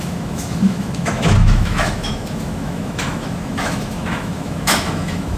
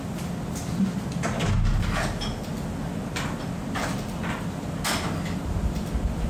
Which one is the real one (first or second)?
second